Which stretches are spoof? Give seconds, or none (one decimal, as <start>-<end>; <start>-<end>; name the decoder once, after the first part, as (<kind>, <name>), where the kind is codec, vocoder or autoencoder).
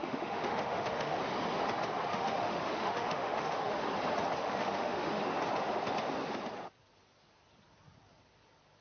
0.0-1.2 (autoencoder, DAC-VAE); 2.1-3.7; 4.4-5.2